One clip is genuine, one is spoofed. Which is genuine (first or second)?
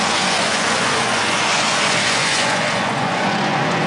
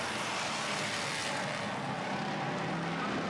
second